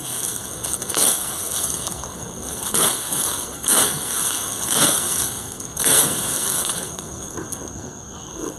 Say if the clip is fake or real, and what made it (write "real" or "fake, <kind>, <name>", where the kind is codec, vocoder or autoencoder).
fake, codec, SNAC